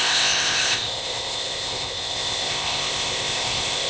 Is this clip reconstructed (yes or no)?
yes